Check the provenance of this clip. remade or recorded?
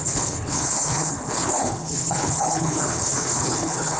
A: remade